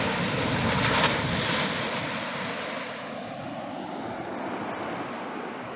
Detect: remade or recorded recorded